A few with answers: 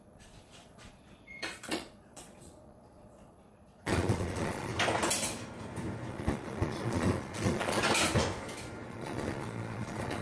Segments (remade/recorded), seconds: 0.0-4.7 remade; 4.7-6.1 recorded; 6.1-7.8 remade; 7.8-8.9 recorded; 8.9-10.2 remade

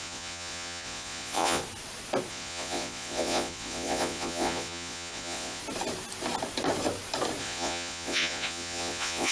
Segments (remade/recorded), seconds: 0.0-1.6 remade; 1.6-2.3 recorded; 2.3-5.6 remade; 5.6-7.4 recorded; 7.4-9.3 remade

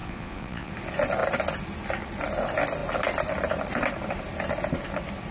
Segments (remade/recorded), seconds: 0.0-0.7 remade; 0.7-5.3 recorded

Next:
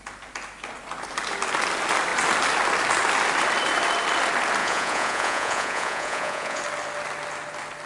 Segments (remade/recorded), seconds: 0.0-4.6 recorded; 4.6-6.6 remade; 6.6-7.9 recorded

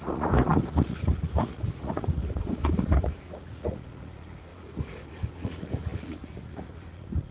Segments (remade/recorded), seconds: 0.0-7.3 remade

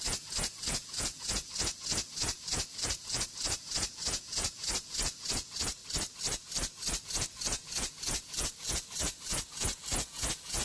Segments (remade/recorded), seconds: 0.0-5.8 remade; 5.8-7.0 recorded; 7.0-10.6 remade

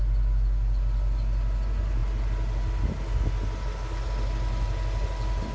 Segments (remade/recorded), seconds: 0.0-5.5 recorded

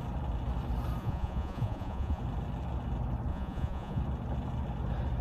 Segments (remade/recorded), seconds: 0.0-1.0 recorded; 1.0-2.2 remade; 2.2-3.3 recorded; 3.3-4.0 remade; 4.0-5.2 recorded